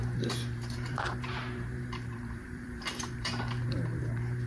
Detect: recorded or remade remade